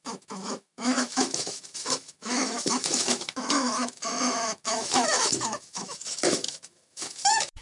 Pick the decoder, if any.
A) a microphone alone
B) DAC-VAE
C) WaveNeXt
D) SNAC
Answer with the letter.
B